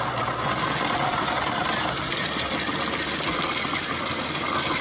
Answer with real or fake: real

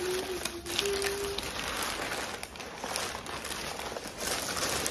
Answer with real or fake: real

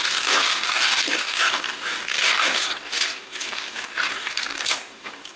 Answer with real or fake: fake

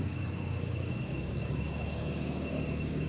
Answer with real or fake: fake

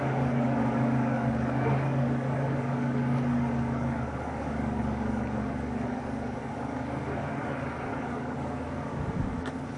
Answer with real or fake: fake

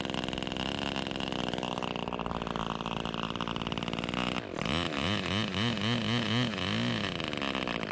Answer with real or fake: real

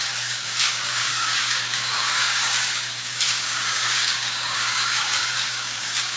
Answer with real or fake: fake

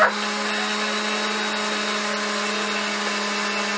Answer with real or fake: real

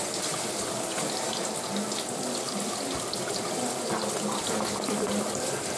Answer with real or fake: real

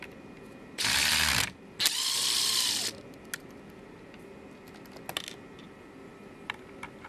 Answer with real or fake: real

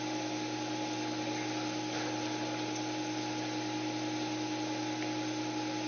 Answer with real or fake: real